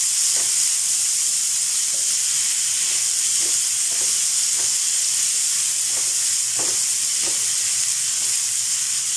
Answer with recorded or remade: recorded